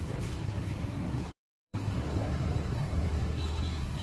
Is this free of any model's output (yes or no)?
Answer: no